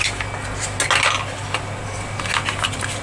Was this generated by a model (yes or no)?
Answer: no